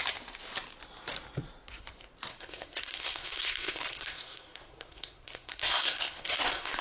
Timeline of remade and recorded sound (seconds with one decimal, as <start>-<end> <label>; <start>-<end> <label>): 0.0-2.3 recorded; 2.3-6.8 remade

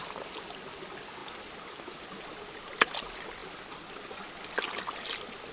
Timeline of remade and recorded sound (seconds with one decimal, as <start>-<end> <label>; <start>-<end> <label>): 0.0-5.5 recorded